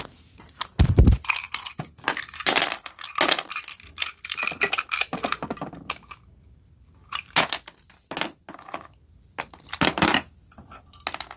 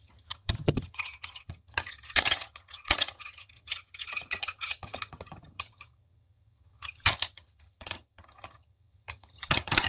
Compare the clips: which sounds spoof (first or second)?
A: second